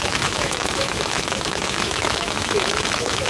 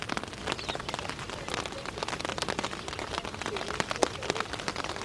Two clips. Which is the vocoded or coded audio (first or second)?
first